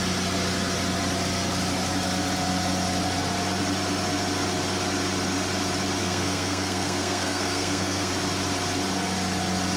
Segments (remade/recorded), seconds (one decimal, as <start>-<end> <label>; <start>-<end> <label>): 0.0-6.0 recorded; 6.0-8.1 remade; 8.1-9.8 recorded